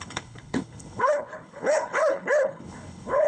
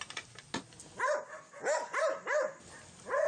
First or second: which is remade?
first